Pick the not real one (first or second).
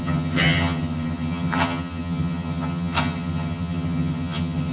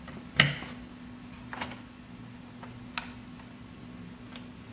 first